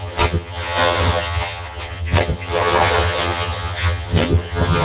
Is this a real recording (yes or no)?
no